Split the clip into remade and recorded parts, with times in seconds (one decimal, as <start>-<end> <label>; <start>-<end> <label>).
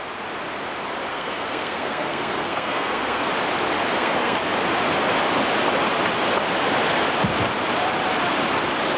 0.0-1.1 recorded; 1.1-3.3 remade; 3.3-3.9 recorded; 3.9-4.4 remade; 4.4-9.0 recorded